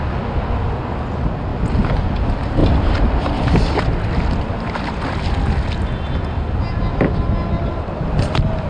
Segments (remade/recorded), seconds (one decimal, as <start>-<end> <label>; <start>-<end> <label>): 0.0-8.7 recorded